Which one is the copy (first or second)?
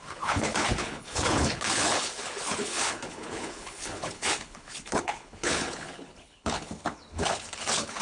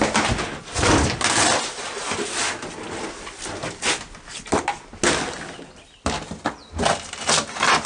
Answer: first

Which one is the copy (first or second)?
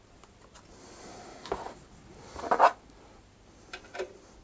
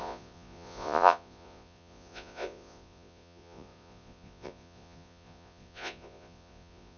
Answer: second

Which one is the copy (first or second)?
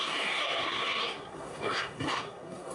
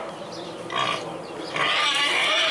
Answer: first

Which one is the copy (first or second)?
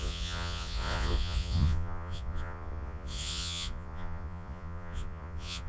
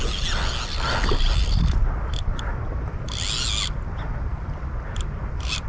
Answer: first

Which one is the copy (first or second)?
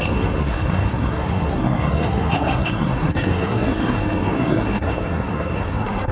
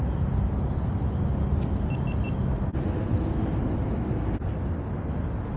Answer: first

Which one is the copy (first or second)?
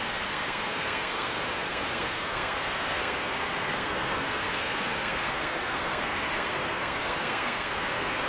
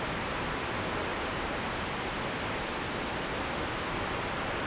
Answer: first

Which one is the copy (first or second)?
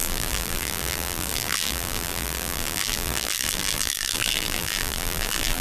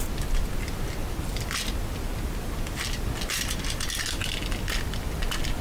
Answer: first